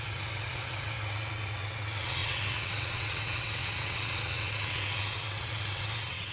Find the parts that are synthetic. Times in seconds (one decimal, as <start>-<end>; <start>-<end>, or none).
0.0-6.3